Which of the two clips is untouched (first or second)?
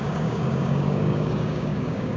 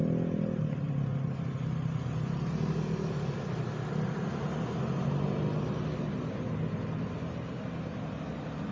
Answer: second